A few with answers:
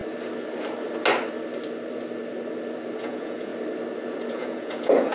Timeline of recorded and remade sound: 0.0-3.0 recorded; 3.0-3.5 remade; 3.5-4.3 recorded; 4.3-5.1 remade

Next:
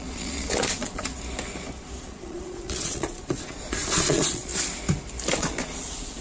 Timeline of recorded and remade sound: 0.0-1.1 remade; 1.1-2.0 recorded; 2.0-4.5 remade; 4.5-5.4 recorded; 5.4-6.2 remade

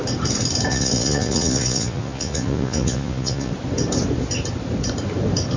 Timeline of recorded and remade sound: 0.0-0.7 recorded; 0.7-3.5 remade; 3.5-5.6 recorded

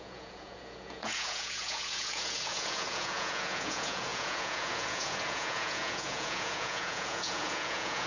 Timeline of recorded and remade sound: 0.0-8.1 remade

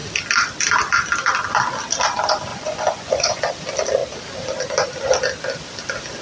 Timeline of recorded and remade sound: 0.0-2.5 recorded; 2.5-3.5 remade; 3.5-6.2 recorded

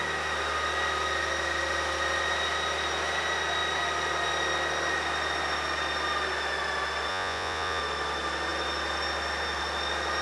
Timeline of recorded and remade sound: 0.0-7.1 recorded; 7.1-7.8 remade; 7.8-10.2 recorded

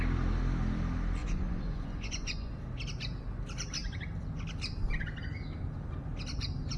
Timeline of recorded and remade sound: 0.0-1.2 recorded; 1.2-2.5 remade; 2.5-6.8 recorded

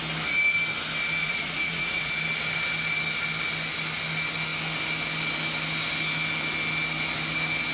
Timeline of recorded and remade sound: 0.0-1.2 recorded; 1.2-2.1 remade; 2.1-7.7 recorded